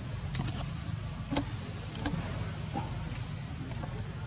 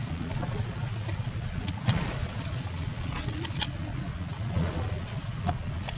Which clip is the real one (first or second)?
first